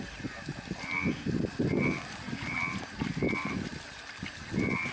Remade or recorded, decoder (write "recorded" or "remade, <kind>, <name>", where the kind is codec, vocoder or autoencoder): recorded